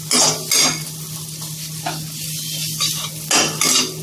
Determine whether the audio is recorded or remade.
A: recorded